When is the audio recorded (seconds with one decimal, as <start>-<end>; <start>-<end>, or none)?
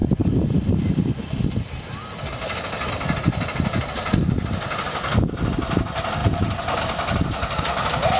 0.0-6.2; 6.8-8.2